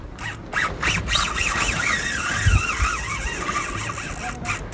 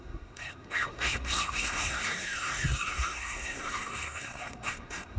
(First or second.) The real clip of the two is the first